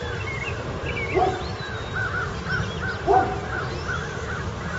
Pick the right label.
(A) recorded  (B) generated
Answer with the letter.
A